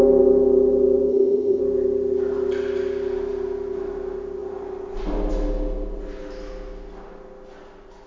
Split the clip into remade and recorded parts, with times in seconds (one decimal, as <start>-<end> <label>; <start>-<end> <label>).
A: 0.0-1.1 recorded; 1.1-1.6 remade; 1.6-8.1 recorded